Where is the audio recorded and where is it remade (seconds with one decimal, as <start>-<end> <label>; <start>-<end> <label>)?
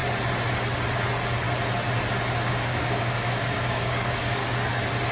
0.0-2.4 recorded; 2.4-4.4 remade; 4.4-5.1 recorded